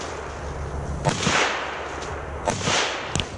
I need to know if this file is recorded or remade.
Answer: recorded